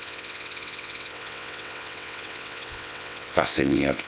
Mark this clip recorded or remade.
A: remade